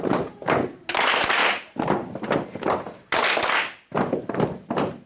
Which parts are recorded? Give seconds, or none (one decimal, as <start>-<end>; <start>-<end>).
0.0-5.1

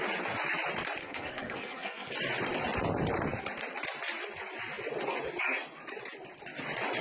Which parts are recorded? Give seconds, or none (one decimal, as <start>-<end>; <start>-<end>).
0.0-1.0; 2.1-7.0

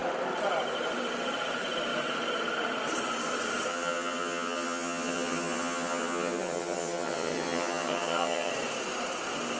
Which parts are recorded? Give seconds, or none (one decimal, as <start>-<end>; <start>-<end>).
0.0-3.7; 8.5-9.6